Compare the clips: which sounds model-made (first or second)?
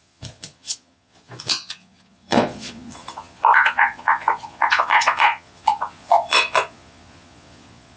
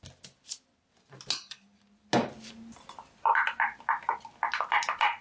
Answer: first